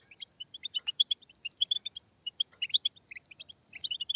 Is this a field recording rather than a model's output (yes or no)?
yes